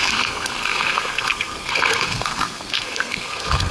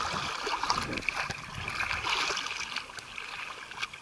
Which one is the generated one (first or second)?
first